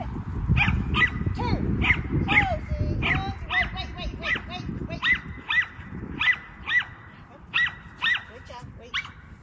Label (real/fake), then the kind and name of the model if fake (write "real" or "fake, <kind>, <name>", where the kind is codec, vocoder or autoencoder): real